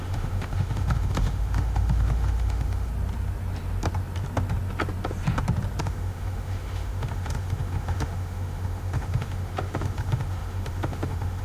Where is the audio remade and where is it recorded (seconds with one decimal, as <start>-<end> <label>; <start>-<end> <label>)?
0.0-2.9 remade; 2.9-5.8 recorded; 5.8-11.4 remade